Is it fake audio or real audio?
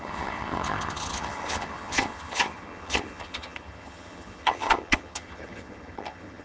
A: fake